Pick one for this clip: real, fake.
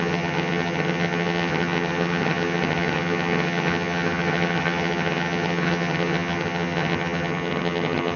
fake